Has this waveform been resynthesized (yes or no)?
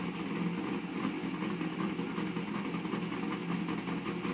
no